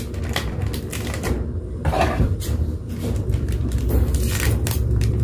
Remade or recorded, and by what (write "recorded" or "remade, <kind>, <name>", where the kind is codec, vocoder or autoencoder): remade, vocoder, BigVGAN v2